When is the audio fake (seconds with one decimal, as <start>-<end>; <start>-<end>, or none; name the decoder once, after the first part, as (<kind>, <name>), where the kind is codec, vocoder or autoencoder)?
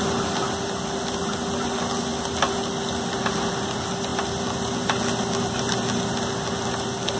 none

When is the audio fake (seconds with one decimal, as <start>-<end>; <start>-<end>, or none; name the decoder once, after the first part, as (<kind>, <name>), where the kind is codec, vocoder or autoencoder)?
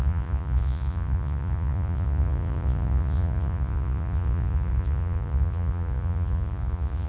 0.0-7.1 (vocoder, Vocos)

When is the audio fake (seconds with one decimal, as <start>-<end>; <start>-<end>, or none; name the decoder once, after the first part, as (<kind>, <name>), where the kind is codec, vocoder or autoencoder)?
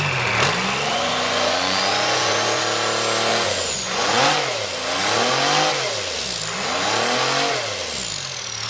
0.9-2.6 (vocoder, Vocos); 3.3-4.2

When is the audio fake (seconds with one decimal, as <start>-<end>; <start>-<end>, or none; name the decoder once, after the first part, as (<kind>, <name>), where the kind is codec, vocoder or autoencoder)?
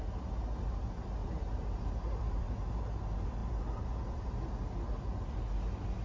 none